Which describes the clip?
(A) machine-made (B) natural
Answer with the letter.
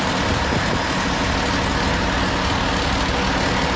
B